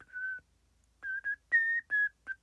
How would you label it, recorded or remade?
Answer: recorded